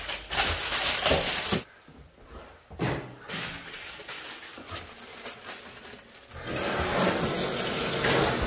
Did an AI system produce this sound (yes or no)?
no